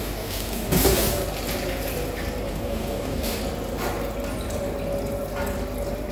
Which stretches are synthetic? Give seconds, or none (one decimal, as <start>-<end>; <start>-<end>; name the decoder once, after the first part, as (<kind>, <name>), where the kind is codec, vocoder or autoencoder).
0.0-1.2 (codec, DAC); 2.5-3.4